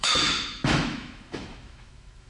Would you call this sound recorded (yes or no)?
no